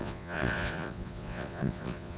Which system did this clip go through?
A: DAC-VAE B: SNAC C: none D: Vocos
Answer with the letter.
D